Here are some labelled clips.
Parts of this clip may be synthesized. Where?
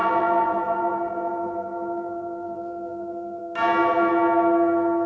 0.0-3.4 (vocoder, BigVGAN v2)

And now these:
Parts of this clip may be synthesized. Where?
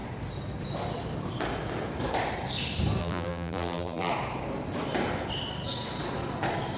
3.0-4.1 (vocoder, BigVGAN v2)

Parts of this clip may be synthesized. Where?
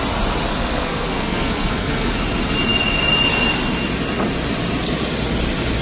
0.5-2.1 (codec, SNAC)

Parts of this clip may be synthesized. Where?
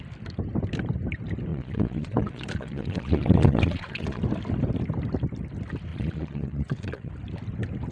1.5-4.2 (vocoder, Vocos); 5.9-7.1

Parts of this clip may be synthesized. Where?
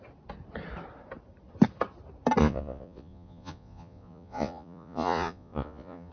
2.4-6.1 (vocoder, Vocos)